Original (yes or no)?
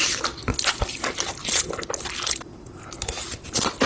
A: yes